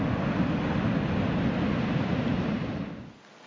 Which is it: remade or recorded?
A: recorded